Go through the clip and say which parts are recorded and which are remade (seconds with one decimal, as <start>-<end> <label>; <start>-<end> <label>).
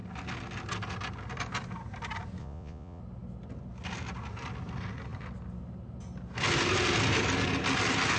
0.0-2.4 recorded; 2.4-3.0 remade; 3.0-8.2 recorded